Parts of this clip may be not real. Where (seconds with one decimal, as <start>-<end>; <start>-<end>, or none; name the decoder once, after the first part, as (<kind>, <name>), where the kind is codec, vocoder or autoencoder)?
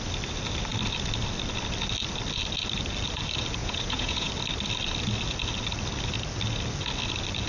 3.6-4.3 (vocoder, Vocos)